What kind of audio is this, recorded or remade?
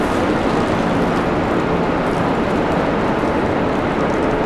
recorded